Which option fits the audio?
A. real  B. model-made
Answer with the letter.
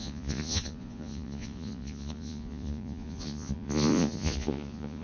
B